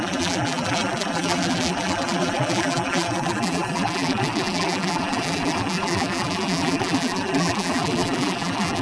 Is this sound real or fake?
fake